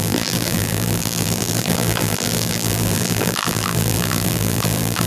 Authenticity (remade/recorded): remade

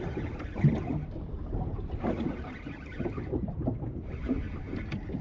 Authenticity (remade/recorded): recorded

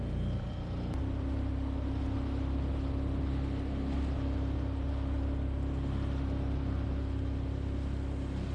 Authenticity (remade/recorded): recorded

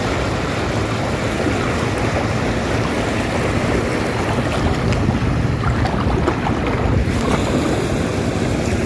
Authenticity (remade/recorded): recorded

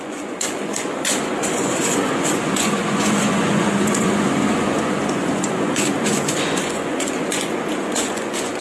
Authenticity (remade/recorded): remade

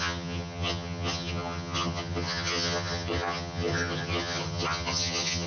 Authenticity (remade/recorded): remade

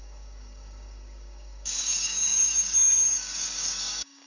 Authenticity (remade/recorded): remade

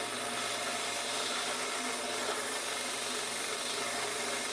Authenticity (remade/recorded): recorded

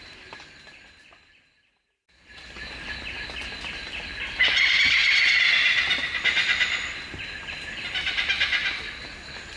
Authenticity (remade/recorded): recorded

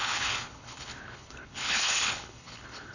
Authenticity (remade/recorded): remade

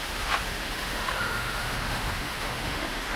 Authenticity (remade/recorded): remade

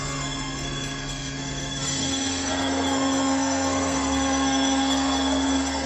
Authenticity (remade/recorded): remade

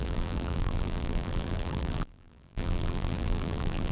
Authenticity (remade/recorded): remade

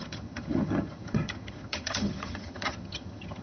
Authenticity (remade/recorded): remade